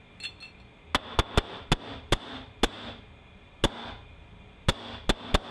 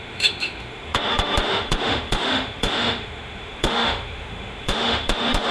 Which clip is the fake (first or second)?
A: second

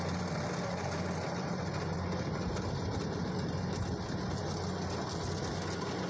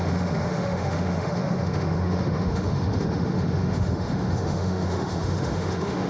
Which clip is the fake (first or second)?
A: second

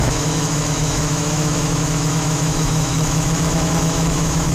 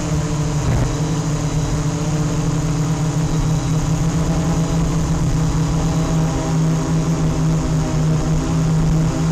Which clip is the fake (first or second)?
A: first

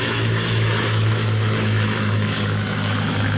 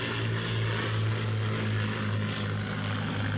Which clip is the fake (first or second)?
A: first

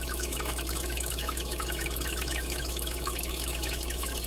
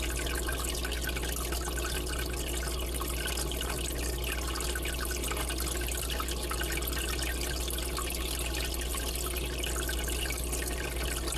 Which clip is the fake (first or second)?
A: first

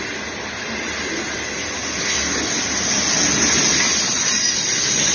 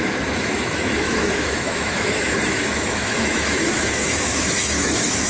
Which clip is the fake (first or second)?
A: second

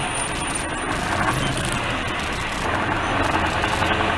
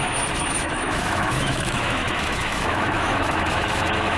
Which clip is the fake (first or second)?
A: second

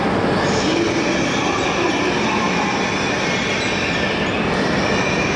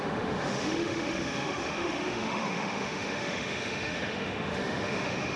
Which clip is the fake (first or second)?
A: second